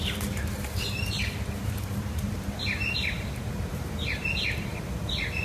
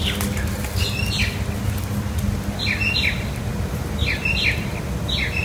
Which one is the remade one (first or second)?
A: first